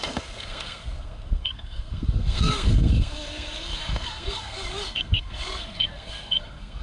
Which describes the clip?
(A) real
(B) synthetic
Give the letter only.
B